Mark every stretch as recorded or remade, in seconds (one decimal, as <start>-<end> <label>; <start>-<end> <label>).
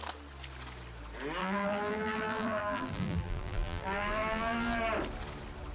0.0-1.4 recorded; 1.4-4.8 remade; 4.8-5.7 recorded